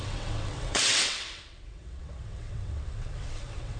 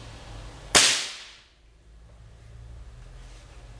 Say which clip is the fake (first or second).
first